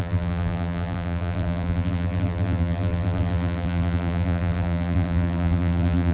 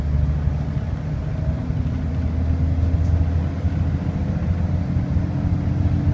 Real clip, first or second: second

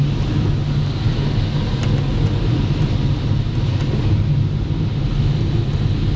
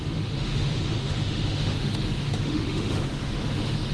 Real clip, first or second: first